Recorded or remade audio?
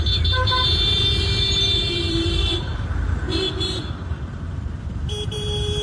remade